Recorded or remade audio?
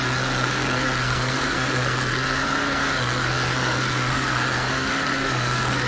remade